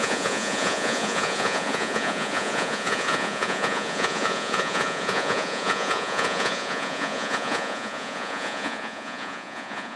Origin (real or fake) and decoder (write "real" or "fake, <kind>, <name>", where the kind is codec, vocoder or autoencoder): fake, vocoder, Vocos